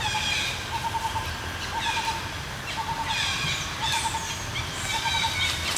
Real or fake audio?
real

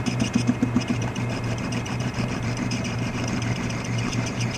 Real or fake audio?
fake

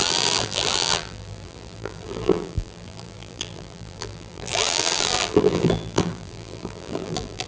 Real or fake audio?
fake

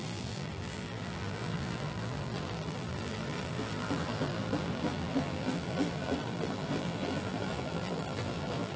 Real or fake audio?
fake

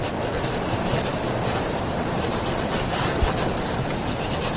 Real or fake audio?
fake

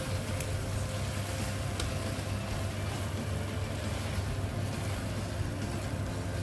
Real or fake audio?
real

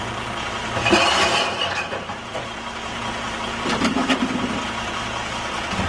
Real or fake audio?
fake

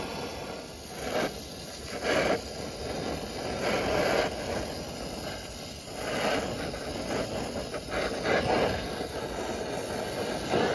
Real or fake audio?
real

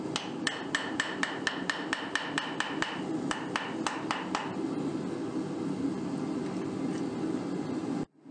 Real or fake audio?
real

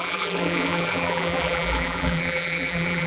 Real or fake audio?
fake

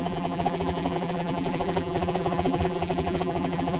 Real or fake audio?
fake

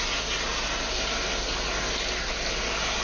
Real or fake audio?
real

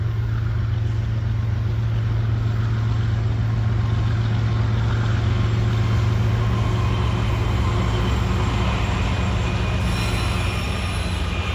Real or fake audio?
real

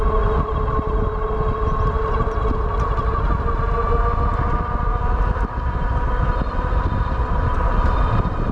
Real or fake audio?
real